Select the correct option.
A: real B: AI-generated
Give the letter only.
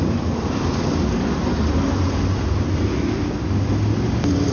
B